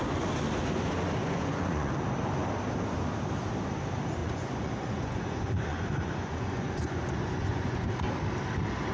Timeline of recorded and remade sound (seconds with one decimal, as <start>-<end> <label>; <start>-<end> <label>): 0.0-1.2 recorded; 1.2-1.9 remade; 1.9-4.2 recorded; 4.2-7.9 remade; 7.9-8.9 recorded